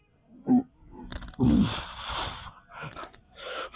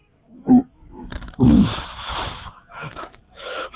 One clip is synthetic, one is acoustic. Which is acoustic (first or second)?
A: first